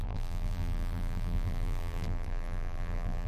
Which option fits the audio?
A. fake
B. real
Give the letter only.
A